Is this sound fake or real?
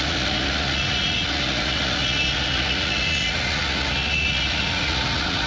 fake